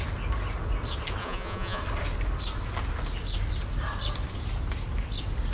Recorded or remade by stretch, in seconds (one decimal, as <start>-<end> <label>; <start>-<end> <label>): 0.0-1.2 recorded; 1.2-1.8 remade; 1.8-5.5 recorded